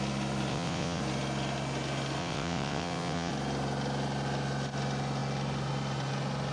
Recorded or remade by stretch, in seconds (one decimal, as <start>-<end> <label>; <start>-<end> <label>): 0.0-0.5 recorded; 0.5-1.0 remade; 1.0-2.2 recorded; 2.2-3.3 remade; 3.3-6.5 recorded